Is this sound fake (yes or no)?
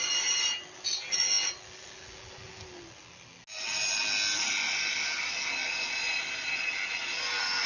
no